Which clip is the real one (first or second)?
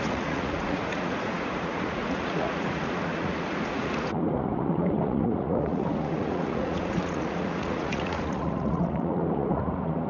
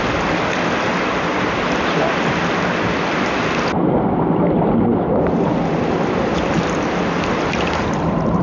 second